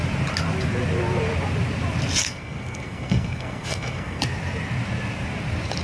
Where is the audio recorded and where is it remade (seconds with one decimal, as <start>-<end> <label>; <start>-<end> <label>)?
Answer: 0.0-2.2 recorded; 2.2-4.2 remade; 4.2-5.8 recorded